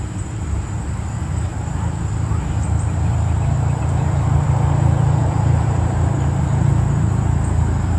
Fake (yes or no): yes